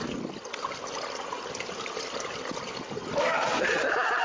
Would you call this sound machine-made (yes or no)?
no